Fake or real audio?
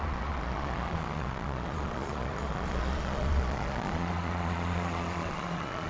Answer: fake